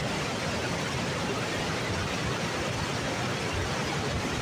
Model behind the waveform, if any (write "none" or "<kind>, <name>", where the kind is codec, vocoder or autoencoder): none